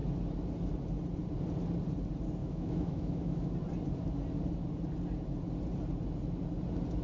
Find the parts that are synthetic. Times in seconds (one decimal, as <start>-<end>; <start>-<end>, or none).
2.4-3.5